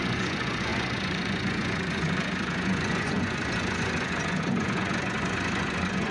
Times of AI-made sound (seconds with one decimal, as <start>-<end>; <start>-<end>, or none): 0.0-6.1